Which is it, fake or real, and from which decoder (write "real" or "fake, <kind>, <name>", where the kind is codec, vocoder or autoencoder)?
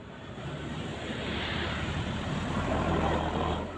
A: fake, vocoder, BigVGAN v2